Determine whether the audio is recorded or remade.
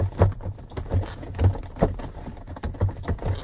recorded